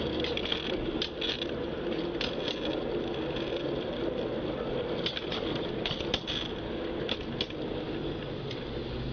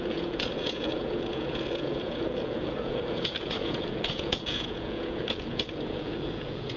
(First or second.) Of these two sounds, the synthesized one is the second